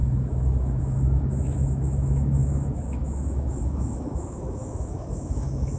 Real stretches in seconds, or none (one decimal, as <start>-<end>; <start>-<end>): none